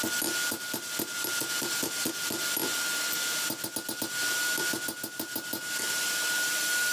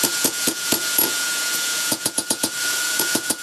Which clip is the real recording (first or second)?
first